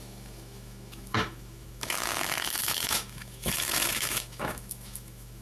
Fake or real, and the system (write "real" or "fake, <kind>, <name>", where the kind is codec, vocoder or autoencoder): fake, autoencoder, DAC-VAE